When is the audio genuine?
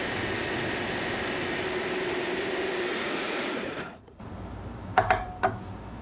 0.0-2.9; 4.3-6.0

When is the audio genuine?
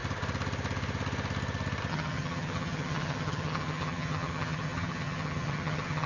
0.0-1.9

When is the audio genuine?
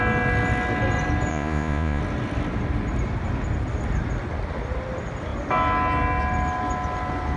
0.0-1.3; 2.0-7.4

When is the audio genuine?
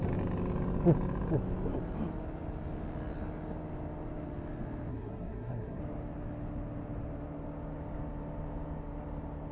0.0-4.9; 5.8-9.5